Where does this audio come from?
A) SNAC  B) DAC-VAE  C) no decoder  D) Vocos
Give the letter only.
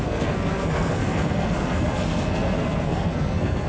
A